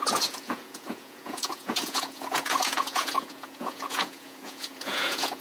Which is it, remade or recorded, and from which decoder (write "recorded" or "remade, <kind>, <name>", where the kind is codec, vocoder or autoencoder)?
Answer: remade, vocoder, Vocos